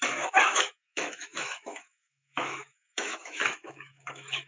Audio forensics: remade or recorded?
remade